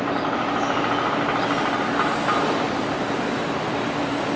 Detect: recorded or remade recorded